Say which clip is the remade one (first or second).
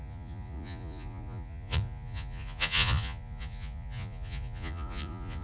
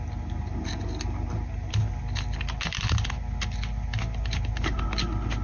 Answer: first